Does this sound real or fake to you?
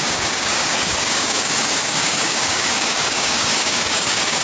fake